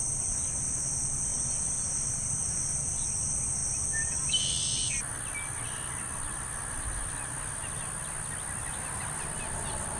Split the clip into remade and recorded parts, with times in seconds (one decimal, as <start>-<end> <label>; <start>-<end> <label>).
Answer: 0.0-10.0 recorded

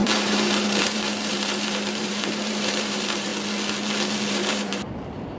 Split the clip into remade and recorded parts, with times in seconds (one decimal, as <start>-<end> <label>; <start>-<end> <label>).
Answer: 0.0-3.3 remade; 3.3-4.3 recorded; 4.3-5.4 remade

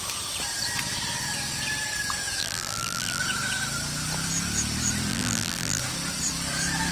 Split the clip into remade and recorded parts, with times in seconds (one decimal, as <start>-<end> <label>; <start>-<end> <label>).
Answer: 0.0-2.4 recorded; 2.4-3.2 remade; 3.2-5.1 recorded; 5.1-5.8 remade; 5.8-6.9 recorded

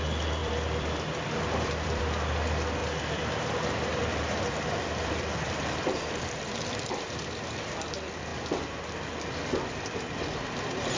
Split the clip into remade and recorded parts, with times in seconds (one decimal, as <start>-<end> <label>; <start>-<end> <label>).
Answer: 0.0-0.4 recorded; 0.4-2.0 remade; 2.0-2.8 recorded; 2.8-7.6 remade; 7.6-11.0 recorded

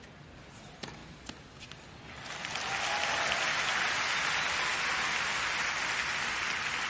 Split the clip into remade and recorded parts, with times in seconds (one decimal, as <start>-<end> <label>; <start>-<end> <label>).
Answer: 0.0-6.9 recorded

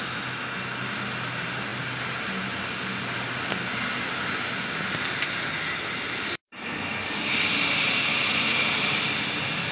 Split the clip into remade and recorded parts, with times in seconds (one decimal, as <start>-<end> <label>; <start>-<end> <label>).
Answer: 0.0-8.1 recorded; 8.1-9.2 remade; 9.2-9.7 recorded